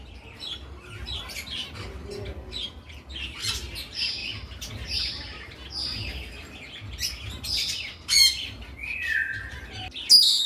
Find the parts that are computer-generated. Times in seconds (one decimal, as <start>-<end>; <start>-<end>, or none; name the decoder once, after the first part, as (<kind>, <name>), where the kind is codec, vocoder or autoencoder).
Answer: none